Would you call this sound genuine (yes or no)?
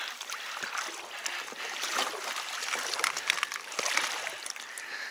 yes